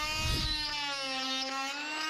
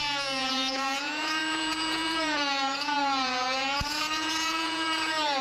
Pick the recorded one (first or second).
first